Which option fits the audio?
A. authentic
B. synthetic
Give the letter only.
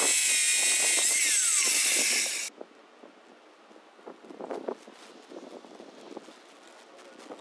A